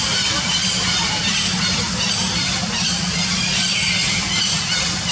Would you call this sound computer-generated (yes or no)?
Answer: no